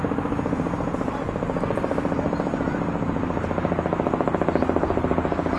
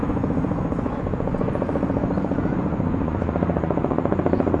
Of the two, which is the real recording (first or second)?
first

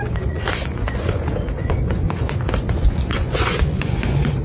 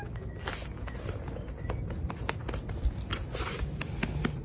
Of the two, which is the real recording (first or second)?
second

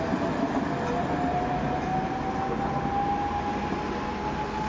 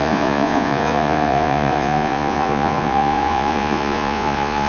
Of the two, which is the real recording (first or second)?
first